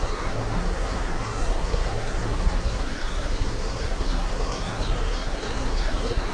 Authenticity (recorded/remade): remade